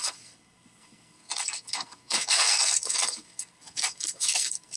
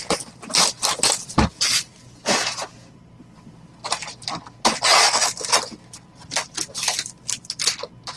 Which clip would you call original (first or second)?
second